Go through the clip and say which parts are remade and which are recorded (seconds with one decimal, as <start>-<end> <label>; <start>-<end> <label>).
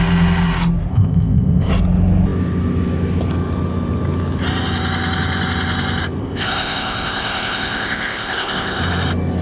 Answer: 0.0-0.9 recorded; 0.9-1.7 remade; 1.7-6.2 recorded; 6.2-8.8 remade; 8.8-9.4 recorded